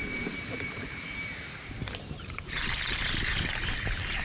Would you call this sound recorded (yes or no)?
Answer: no